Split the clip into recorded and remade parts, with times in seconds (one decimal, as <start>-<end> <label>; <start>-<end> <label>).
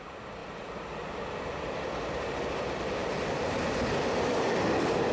0.0-5.1 recorded